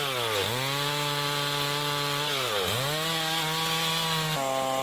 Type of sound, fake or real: real